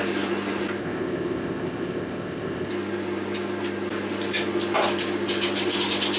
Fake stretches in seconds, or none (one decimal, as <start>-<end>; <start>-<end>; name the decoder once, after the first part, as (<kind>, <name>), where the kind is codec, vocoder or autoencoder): 0.8-2.7 (codec, ZipCodec)